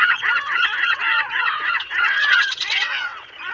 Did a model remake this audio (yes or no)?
yes